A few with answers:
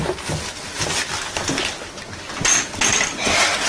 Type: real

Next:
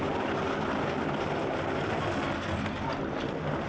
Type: real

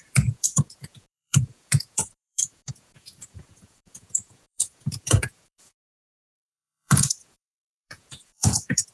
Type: fake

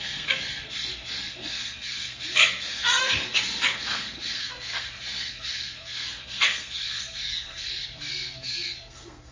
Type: fake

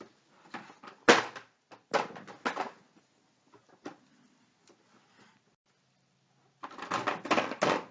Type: real